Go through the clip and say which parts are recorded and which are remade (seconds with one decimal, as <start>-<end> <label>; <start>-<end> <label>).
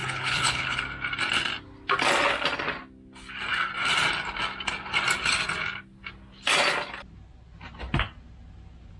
0.0-0.8 remade; 0.8-9.0 recorded